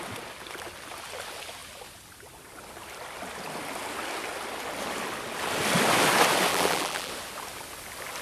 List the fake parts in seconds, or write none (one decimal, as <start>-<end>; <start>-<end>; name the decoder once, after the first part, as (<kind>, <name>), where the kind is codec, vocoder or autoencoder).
6.5-7.1 (vocoder, BigVGAN v2)